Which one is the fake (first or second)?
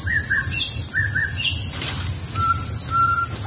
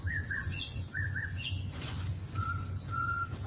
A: second